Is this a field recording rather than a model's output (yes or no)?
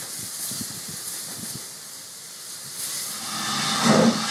yes